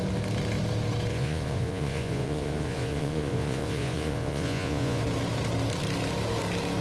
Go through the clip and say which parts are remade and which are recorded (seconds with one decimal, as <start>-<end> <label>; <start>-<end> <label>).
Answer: 0.0-1.1 recorded; 1.1-5.0 remade; 5.0-6.8 recorded